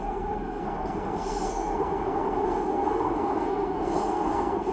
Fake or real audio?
fake